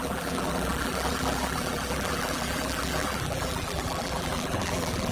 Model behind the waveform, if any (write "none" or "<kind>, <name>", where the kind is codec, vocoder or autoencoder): vocoder, BigVGAN v2